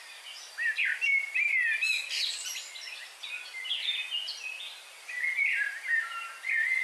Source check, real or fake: real